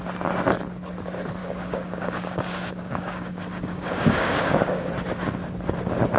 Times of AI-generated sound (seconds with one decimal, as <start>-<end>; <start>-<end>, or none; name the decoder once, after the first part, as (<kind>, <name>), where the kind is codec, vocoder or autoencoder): 1.4-4.9 (codec, DAC)